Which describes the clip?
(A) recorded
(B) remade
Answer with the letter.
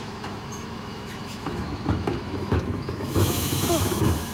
B